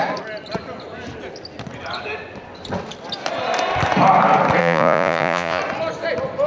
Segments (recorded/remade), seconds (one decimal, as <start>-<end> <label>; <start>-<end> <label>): 0.0-4.6 recorded; 4.6-5.6 remade; 5.6-6.5 recorded